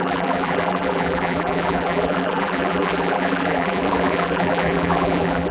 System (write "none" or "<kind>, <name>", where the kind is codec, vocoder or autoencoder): vocoder, BigVGAN v2